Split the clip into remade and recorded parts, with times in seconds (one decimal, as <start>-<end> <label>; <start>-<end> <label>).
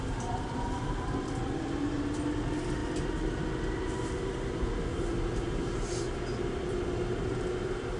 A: 0.0-8.0 recorded